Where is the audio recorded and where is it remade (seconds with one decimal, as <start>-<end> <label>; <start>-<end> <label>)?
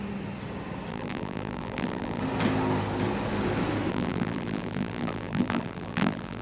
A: 0.0-0.9 recorded; 0.9-2.2 remade; 2.2-3.9 recorded; 3.9-6.4 remade